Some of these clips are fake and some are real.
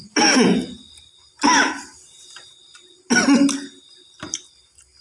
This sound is real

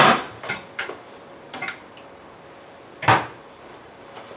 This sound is fake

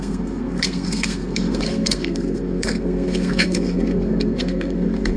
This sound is fake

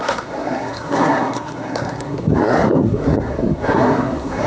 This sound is fake